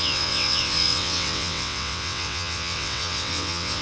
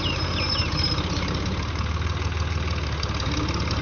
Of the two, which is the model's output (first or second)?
first